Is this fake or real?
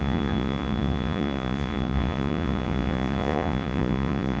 fake